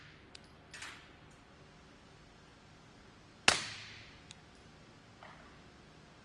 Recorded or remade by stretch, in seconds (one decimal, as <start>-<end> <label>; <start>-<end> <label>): 0.0-6.2 recorded